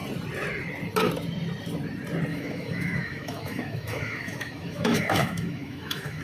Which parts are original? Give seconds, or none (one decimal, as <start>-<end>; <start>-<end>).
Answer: 0.0-2.3